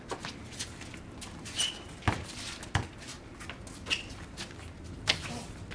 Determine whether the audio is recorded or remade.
recorded